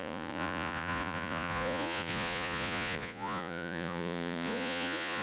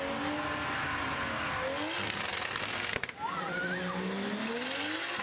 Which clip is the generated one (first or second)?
first